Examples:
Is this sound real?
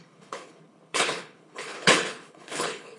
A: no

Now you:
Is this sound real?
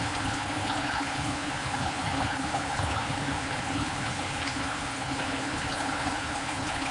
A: no